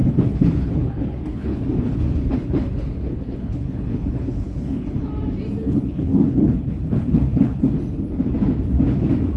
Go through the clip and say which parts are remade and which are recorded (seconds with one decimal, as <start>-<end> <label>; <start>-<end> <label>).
0.0-5.1 remade; 5.1-5.6 recorded; 5.6-7.7 remade; 7.7-9.4 recorded